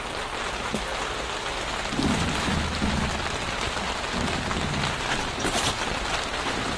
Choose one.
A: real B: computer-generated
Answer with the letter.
A